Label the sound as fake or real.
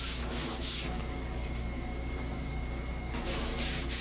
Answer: fake